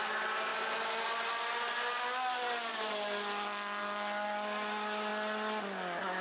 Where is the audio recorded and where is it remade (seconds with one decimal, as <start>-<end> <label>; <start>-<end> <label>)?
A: 0.0-6.2 recorded